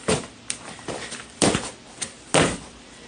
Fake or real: real